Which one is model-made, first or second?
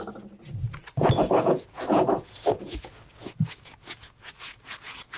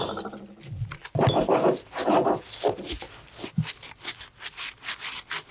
first